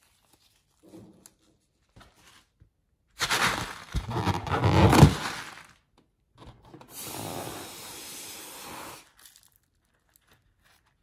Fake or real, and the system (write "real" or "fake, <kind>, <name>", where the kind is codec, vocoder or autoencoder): real